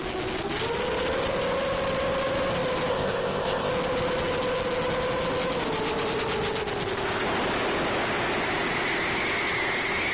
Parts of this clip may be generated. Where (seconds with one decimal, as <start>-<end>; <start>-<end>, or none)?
2.9-3.7